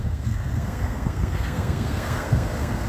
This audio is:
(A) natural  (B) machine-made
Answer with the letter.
B